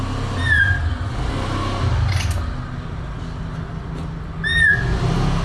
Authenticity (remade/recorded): recorded